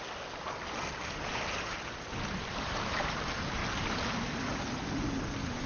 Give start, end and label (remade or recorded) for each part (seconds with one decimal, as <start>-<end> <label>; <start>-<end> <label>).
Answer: 0.0-5.7 recorded